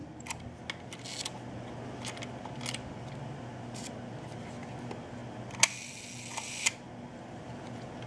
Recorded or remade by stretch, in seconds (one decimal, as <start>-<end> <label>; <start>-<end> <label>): 0.0-8.1 recorded